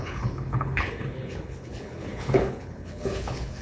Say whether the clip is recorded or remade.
remade